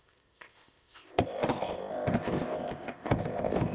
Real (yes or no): no